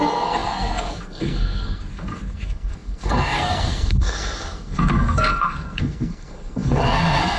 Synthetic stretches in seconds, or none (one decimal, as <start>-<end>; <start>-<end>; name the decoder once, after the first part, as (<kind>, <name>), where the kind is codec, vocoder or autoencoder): 0.0-7.4 (codec, SNAC)